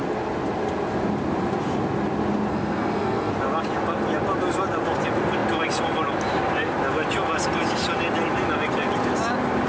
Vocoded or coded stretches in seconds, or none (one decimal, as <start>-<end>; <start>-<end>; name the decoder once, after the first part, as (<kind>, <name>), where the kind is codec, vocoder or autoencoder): 2.5-3.3 (codec, SNAC)

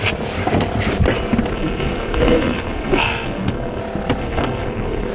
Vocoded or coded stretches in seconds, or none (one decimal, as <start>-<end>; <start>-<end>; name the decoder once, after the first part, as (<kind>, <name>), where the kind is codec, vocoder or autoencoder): 1.5-3.8 (codec, SNAC); 4.2-5.1

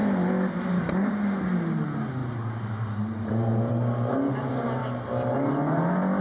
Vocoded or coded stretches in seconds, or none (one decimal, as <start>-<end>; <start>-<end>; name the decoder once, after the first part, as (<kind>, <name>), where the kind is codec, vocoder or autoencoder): none

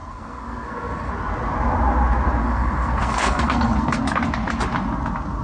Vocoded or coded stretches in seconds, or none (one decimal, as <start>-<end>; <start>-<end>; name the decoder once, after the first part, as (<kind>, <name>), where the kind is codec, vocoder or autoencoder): 0.0-1.1 (codec, SNAC); 2.4-4.0